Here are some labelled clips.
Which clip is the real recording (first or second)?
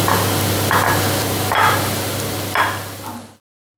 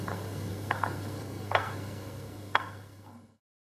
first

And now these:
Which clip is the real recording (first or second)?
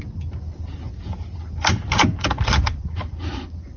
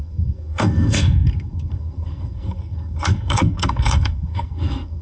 first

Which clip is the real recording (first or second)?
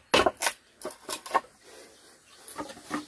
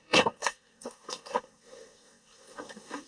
first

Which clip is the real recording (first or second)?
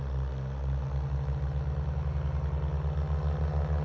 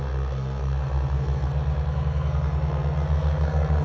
first